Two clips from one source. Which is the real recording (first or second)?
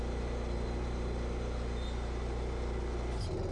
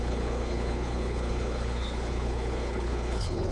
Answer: first